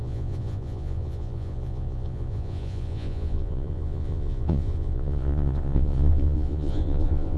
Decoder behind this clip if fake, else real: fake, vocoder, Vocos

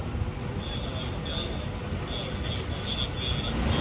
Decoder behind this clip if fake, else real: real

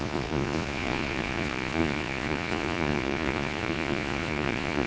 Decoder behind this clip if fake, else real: fake, vocoder, Vocos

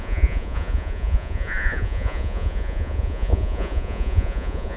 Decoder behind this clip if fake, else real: fake, vocoder, Vocos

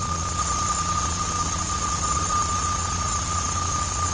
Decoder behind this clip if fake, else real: fake, vocoder, Vocos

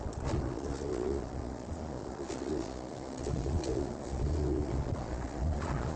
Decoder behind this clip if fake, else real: fake, vocoder, Vocos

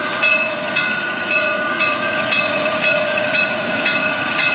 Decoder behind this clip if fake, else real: fake, vocoder, Vocos